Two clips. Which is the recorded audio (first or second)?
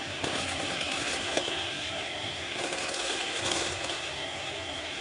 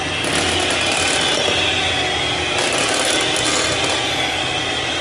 second